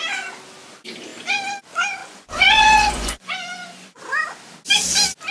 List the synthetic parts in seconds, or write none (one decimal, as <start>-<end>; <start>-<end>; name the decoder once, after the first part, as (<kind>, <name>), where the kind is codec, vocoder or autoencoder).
2.0-4.0 (vocoder, Vocos)